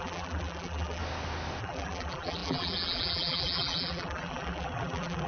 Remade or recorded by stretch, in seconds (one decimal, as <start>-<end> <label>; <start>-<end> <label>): 0.0-1.0 remade; 1.0-1.6 recorded; 1.6-5.3 remade